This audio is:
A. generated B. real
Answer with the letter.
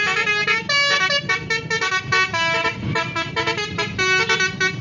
B